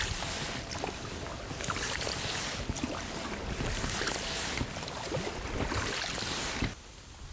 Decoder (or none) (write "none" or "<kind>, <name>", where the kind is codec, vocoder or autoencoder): none